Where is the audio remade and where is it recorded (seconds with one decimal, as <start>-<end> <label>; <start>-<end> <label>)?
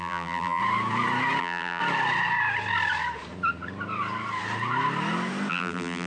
0.0-0.6 remade; 0.6-1.4 recorded; 1.4-1.8 remade; 1.8-5.5 recorded; 5.5-6.1 remade